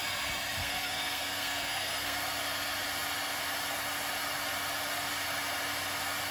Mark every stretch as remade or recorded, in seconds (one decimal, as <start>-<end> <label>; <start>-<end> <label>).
0.0-0.6 recorded; 0.6-2.2 remade; 2.2-6.3 recorded